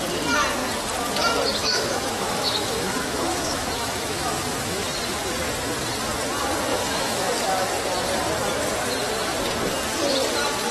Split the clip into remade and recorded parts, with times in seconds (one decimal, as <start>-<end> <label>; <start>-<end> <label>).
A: 0.0-1.6 recorded; 1.6-4.8 remade; 4.8-6.7 recorded; 6.7-7.3 remade; 7.3-10.7 recorded